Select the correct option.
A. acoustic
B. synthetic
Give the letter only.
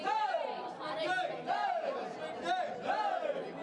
A